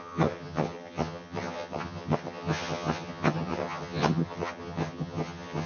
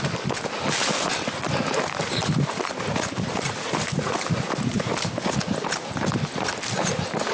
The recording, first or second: second